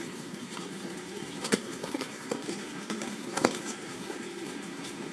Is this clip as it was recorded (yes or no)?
no